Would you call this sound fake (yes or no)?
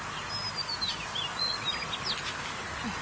no